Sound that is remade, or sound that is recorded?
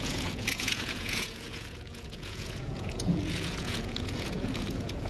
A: remade